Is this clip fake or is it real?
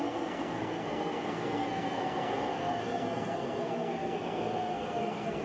fake